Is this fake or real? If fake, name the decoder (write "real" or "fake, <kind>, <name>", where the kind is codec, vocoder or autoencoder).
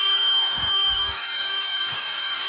fake, codec, DAC